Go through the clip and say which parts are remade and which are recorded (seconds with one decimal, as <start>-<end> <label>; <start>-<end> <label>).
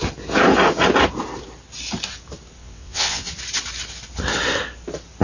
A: 0.0-2.6 recorded; 2.6-3.3 remade; 3.3-5.2 recorded